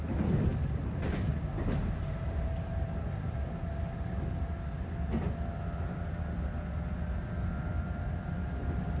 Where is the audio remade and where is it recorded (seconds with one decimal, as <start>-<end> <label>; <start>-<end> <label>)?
0.0-9.0 recorded